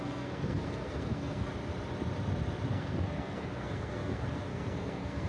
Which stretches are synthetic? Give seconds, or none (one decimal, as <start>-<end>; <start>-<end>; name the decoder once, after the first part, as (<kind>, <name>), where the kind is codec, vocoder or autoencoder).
0.0-1.5 (codec, SNAC); 2.7-5.3